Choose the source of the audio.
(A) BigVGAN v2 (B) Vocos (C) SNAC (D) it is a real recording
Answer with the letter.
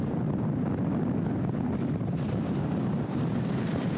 D